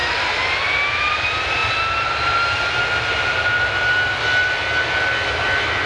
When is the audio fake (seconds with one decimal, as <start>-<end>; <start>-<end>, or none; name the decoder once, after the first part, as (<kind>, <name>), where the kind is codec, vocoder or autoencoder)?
0.0-0.6 (vocoder, BigVGAN v2); 1.6-2.8